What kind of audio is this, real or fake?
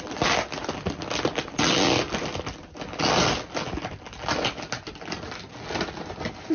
real